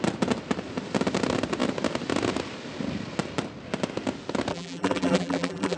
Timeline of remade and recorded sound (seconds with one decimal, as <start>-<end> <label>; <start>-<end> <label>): 0.0-4.5 recorded; 4.5-5.8 remade